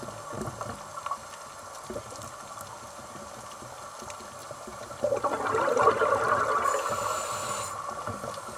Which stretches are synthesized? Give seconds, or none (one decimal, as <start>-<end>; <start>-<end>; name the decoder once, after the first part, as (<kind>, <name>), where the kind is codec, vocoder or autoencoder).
4.4-5.2 (vocoder, BigVGAN v2)